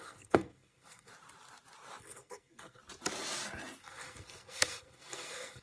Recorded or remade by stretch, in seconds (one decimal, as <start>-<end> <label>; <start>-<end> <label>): 0.0-1.1 remade; 1.1-2.0 recorded; 2.0-2.8 remade; 2.8-3.8 recorded; 3.8-5.6 remade